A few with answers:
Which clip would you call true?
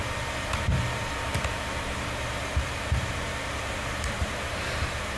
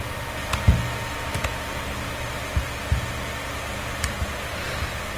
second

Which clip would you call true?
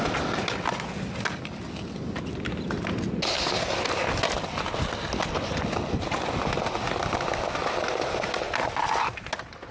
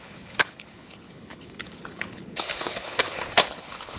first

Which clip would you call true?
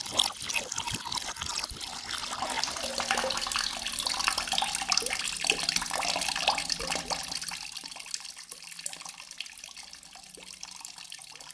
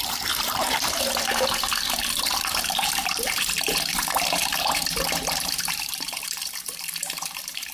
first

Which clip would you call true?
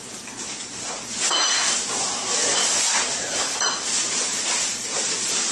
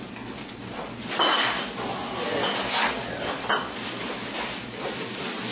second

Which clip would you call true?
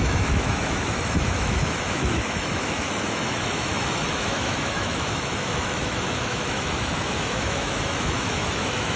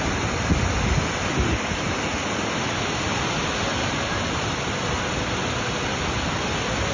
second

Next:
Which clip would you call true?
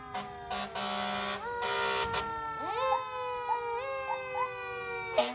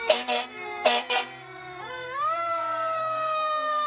first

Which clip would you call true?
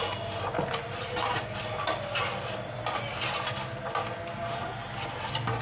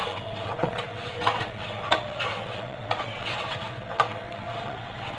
first